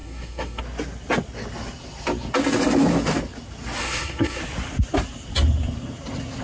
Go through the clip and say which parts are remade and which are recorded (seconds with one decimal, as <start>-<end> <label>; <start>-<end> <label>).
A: 0.0-0.6 remade; 0.6-3.8 recorded; 3.8-4.4 remade; 4.4-6.4 recorded